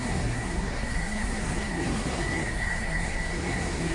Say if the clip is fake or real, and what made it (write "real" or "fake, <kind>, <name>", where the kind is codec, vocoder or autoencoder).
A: fake, codec, SNAC